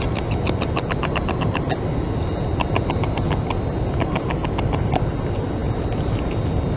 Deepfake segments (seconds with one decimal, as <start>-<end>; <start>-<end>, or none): none